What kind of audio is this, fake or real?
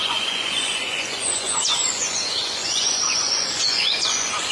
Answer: fake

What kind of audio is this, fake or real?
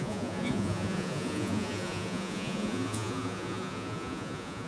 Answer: fake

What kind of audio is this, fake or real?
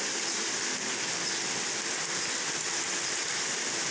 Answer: real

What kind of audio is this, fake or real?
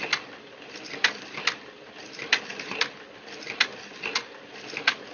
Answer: real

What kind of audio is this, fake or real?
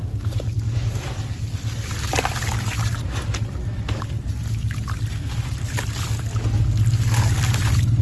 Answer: real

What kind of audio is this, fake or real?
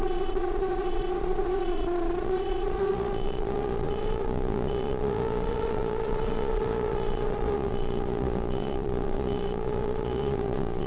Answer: fake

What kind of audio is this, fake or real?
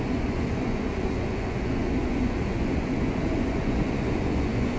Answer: fake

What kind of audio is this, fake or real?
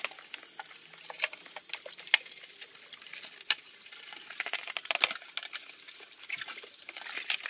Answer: real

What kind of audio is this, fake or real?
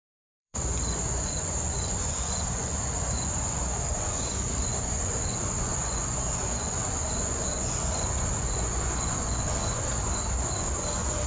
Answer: fake